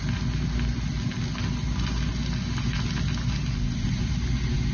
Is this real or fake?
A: real